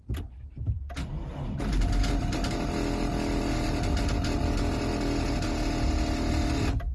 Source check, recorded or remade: recorded